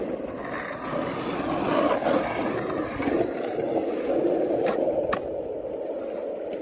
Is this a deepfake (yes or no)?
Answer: no